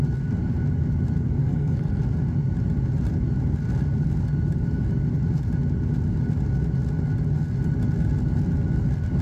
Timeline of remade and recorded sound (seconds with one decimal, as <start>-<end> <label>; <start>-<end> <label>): 0.0-1.4 recorded; 1.4-2.0 remade; 2.0-9.2 recorded